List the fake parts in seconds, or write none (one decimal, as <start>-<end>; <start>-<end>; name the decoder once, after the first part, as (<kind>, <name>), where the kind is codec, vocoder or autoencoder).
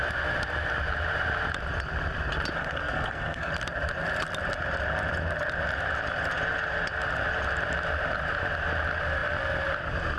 2.6-3.5 (codec, SNAC)